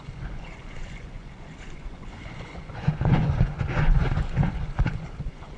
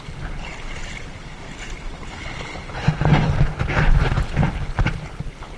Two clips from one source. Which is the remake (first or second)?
first